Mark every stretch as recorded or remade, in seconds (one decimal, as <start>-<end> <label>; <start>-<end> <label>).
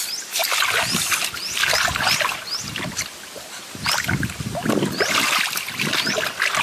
0.0-6.6 recorded